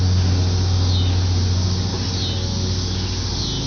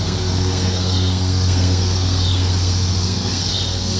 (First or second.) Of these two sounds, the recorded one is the first